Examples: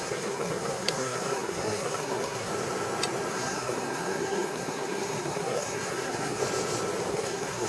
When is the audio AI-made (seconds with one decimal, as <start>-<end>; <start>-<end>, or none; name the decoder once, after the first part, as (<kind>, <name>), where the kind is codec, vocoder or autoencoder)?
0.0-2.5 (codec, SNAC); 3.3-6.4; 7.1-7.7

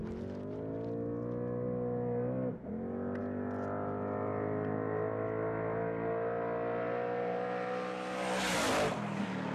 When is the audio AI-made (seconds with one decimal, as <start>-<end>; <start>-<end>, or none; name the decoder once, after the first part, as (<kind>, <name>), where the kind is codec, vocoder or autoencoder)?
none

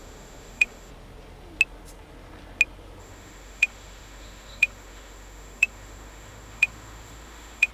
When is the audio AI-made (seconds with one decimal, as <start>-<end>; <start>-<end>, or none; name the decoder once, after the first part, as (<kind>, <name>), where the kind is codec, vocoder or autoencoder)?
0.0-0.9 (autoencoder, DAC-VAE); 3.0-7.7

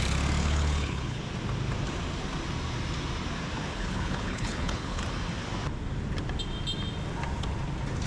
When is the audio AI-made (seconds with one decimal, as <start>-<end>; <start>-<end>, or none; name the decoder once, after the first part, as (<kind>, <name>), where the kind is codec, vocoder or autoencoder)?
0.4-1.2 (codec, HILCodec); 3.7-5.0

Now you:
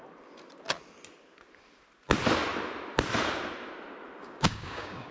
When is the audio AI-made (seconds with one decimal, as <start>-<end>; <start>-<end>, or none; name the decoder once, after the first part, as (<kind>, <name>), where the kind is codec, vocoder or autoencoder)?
4.2-5.1 (codec, DAC)

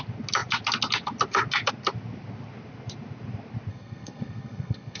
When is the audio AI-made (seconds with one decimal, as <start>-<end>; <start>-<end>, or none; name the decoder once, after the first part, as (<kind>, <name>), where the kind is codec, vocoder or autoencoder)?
3.7-5.0 (codec, SNAC)